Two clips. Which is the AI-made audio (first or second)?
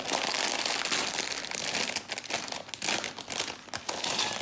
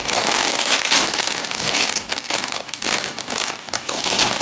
second